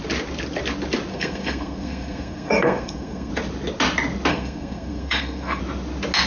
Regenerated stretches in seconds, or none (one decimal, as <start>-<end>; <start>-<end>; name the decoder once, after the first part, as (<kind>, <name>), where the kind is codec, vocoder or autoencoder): 1.1-3.3 (codec, SNAC); 4.3-5.6